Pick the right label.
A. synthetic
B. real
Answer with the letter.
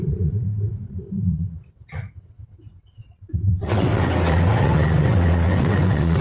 A